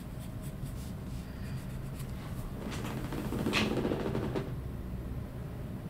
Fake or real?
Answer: real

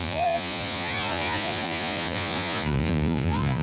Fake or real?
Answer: fake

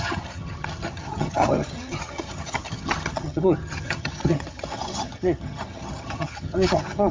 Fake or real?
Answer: fake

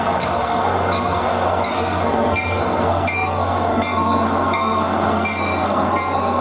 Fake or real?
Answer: fake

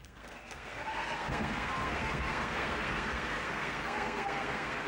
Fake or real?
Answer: fake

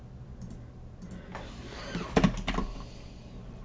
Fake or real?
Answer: real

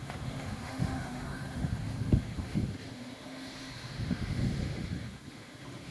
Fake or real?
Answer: fake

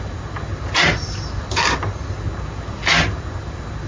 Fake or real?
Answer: real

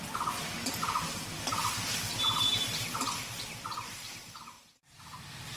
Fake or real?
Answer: real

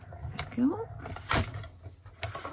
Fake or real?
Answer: real